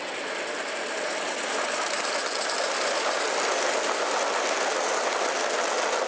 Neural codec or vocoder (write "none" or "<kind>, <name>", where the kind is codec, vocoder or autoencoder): none